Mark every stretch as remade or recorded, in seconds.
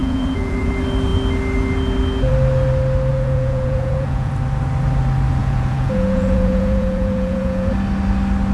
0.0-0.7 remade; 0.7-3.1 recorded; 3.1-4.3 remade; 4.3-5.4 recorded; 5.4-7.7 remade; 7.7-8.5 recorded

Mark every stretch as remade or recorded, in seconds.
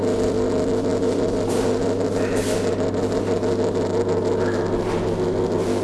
0.0-5.8 recorded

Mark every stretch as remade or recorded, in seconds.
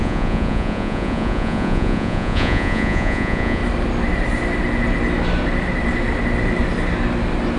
0.0-3.6 remade; 3.6-7.6 recorded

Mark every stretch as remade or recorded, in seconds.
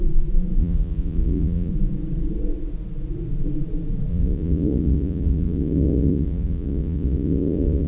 0.0-0.6 recorded; 0.6-1.7 remade; 1.7-4.1 recorded; 4.1-7.9 remade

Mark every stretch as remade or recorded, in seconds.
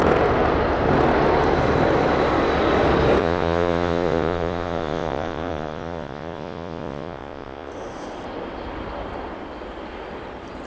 0.0-3.2 recorded; 3.2-7.7 remade; 7.7-10.7 recorded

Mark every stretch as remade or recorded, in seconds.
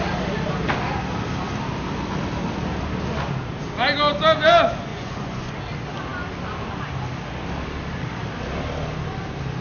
0.0-4.9 recorded; 4.9-5.5 remade; 5.5-9.6 recorded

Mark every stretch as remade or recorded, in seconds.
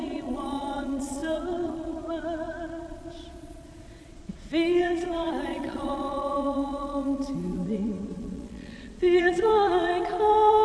0.0-10.6 remade